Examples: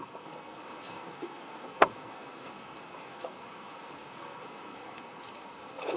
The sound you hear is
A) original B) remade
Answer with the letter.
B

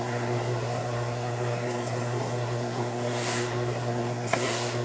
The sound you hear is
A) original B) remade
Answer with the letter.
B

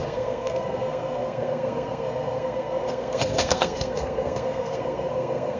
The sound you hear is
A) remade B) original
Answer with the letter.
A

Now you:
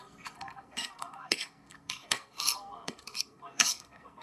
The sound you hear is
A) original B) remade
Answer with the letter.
B